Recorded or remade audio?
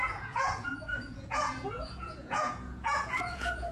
remade